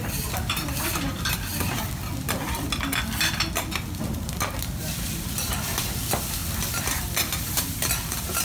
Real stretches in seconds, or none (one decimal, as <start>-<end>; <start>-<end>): 1.5-3.8